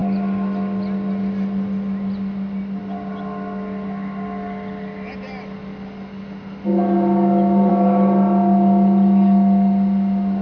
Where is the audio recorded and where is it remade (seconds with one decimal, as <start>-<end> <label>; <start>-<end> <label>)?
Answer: 0.0-10.4 recorded